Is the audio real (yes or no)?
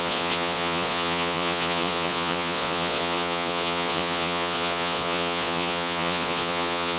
no